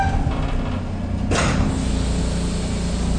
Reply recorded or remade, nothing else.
recorded